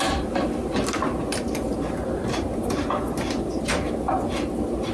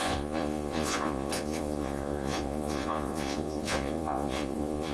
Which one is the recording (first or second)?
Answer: first